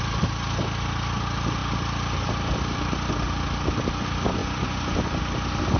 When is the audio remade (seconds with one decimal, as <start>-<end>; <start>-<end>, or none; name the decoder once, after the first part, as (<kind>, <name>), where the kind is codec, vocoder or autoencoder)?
4.4-5.2 (vocoder, Vocos)